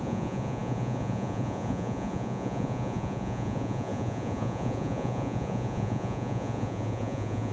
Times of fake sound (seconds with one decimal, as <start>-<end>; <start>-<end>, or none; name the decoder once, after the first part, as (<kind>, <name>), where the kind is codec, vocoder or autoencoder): 0.0-7.5 (vocoder, Vocos)